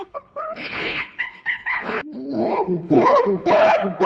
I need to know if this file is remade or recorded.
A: remade